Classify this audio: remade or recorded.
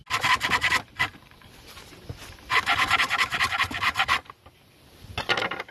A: recorded